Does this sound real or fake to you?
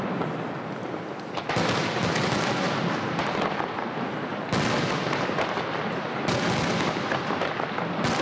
real